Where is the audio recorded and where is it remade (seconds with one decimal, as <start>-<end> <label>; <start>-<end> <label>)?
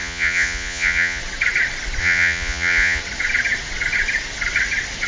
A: 0.0-1.2 remade; 1.2-2.0 recorded; 2.0-3.0 remade; 3.0-5.1 recorded